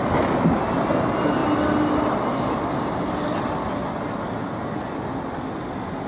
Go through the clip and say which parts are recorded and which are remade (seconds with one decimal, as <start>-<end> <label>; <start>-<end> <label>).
0.0-6.1 recorded